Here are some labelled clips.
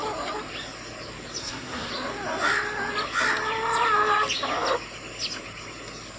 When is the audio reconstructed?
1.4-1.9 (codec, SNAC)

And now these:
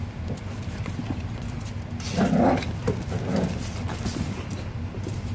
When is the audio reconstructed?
none

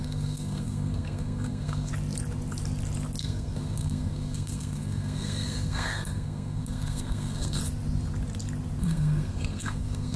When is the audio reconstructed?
0.0-1.9 (codec, SNAC); 3.2-7.6; 8.8-10.2

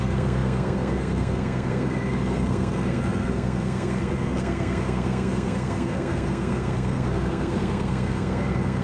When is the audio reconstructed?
0.0-8.8 (codec, SNAC)